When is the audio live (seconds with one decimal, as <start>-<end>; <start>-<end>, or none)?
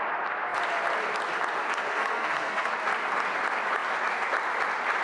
0.0-1.8; 2.7-5.0